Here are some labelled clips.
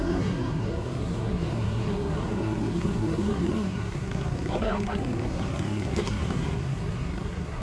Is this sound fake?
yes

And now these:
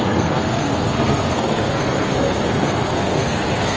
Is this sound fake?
yes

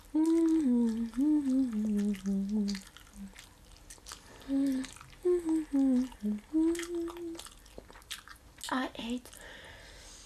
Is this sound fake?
no